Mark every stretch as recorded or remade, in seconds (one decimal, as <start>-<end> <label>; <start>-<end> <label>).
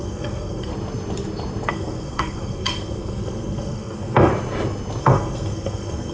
0.0-0.7 remade; 0.7-1.7 recorded; 1.7-4.3 remade; 4.3-5.0 recorded; 5.0-6.1 remade